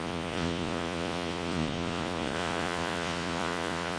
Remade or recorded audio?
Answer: remade